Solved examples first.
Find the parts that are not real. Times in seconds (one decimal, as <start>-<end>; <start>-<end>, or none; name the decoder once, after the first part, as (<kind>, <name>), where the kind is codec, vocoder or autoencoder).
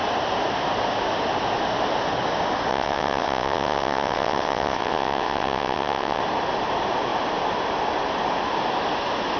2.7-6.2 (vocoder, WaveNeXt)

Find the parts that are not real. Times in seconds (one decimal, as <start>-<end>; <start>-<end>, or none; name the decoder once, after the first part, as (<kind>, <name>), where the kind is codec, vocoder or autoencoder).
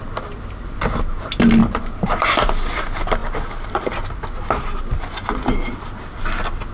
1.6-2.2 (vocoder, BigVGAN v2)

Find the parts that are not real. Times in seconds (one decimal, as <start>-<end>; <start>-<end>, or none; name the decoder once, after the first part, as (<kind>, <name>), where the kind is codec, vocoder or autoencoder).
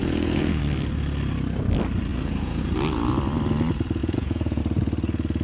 0.0-0.6 (vocoder, Vocos); 2.1-2.6; 4.0-4.6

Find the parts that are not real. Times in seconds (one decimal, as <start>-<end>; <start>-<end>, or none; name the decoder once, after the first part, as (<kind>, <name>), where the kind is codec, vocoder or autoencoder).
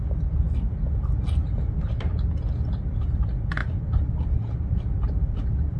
1.4-2.3 (vocoder, BigVGAN v2); 3.6-5.8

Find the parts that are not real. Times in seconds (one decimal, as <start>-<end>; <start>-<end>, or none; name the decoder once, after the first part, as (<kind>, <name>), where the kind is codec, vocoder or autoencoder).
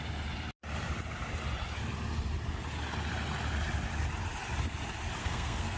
5.2-5.8 (codec, SNAC)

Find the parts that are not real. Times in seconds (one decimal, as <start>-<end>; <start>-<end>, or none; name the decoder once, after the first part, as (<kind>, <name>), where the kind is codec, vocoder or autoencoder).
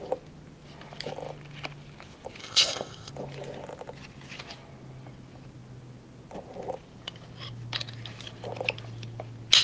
2.4-3.1 (codec, ZipCodec)